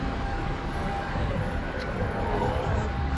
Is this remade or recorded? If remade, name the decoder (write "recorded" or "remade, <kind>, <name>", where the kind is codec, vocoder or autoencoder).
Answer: remade, codec, DAC